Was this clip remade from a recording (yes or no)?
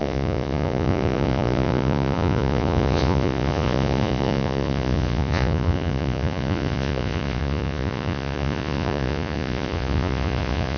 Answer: yes